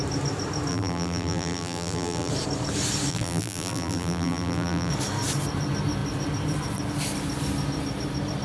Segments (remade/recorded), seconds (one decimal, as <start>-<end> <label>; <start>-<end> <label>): 0.0-0.7 recorded; 0.7-2.3 remade; 2.3-3.1 recorded; 3.1-4.9 remade; 4.9-8.4 recorded